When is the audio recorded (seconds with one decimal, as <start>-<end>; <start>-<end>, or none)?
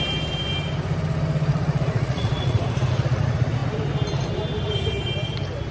0.0-1.5; 2.6-5.7